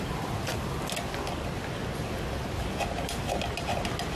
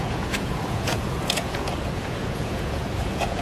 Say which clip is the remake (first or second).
second